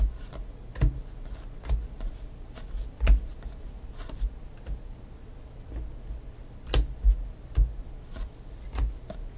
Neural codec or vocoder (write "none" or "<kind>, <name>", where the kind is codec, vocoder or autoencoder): none